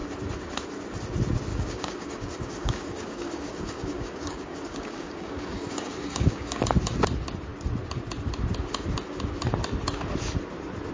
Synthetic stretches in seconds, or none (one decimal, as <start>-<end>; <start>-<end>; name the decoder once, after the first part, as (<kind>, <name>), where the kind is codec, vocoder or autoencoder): 1.5-6.6 (codec, DAC)